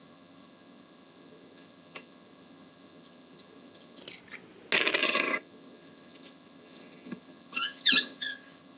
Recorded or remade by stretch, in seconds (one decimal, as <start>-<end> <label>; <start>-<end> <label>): 0.0-4.0 remade; 4.0-5.0 recorded; 5.0-8.8 remade